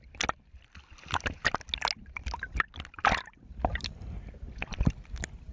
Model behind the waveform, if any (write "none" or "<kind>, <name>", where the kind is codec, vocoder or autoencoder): none